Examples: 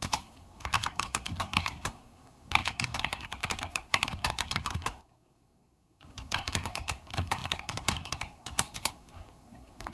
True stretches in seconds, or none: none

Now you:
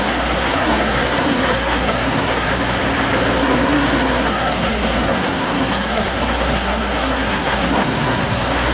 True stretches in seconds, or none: 2.5-3.4

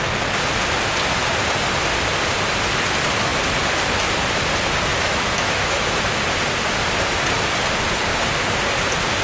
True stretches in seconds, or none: 0.0-4.9; 6.0-9.2

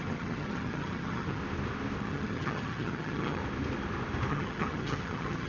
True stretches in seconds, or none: 1.4-2.0; 3.4-4.3